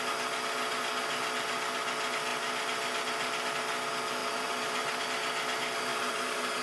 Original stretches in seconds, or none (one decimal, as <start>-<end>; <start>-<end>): 0.0-4.2; 5.0-5.9